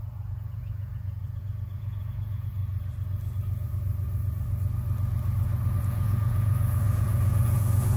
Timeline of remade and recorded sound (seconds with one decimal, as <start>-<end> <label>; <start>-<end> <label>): 0.0-2.6 remade; 2.6-5.8 recorded; 5.8-8.0 remade